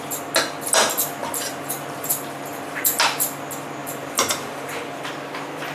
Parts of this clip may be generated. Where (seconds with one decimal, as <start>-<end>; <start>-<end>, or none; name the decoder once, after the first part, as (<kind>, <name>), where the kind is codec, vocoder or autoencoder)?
1.2-2.1 (vocoder, BigVGAN v2); 2.5-3.2; 3.8-5.1